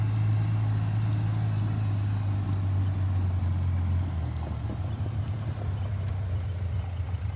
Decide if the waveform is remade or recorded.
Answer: recorded